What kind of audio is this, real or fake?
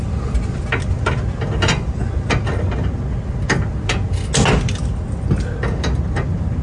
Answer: real